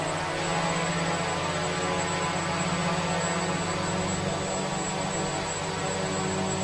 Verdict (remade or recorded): recorded